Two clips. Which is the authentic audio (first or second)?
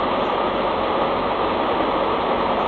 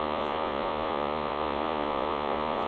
first